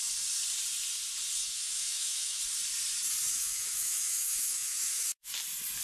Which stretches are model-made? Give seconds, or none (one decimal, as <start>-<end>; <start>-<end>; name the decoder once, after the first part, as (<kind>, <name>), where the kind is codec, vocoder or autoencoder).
1.4-2.4 (autoencoder, DAC-VAE); 3.3-5.3